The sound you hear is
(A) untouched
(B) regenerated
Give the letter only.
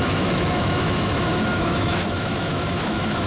B